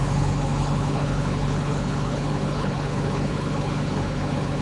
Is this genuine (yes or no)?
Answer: no